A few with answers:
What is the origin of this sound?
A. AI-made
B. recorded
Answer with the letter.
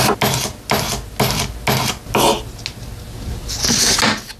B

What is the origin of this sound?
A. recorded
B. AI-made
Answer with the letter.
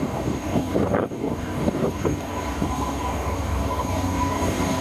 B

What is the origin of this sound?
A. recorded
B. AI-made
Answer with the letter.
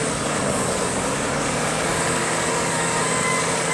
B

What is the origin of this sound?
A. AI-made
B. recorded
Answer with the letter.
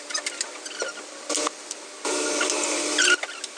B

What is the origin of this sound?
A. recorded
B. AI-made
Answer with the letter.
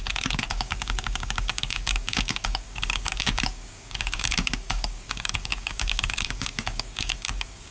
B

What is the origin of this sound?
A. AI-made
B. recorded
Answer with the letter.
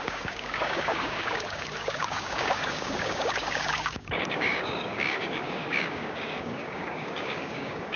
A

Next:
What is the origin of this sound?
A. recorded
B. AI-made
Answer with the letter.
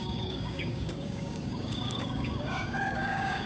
B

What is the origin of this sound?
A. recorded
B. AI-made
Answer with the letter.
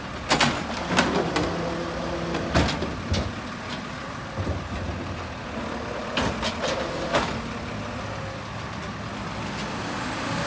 A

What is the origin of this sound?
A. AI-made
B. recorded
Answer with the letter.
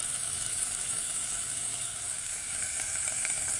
A